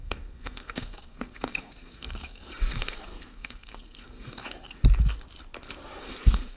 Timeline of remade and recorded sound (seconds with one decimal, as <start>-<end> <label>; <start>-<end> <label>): 0.0-4.4 remade; 4.4-6.0 recorded; 6.0-6.6 remade